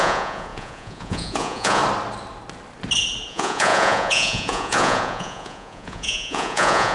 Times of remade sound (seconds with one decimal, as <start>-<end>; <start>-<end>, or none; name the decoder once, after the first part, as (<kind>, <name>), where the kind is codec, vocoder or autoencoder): 0.0-1.8 (vocoder, Vocos); 3.3-6.9